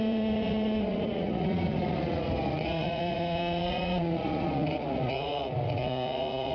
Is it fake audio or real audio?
fake